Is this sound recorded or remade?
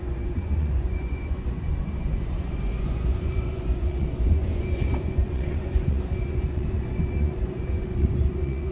remade